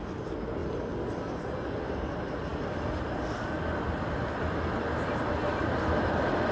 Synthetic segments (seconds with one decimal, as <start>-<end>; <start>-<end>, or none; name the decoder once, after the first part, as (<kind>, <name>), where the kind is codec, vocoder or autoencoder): none